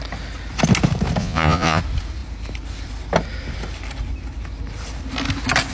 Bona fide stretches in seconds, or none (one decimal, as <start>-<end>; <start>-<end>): 0.0-1.2; 1.8-5.7